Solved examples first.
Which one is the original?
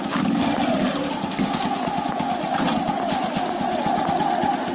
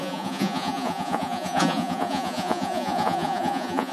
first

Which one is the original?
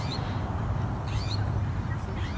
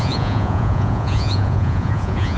first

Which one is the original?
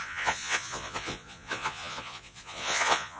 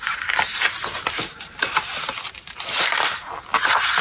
second